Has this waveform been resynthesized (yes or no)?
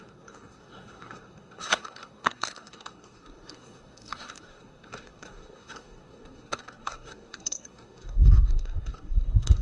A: yes